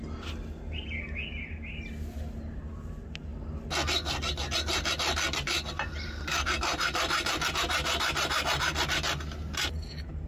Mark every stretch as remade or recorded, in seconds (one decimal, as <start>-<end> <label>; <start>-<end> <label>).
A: 0.0-10.3 recorded